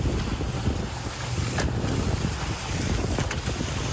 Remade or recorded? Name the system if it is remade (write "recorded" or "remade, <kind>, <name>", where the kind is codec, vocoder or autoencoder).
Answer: recorded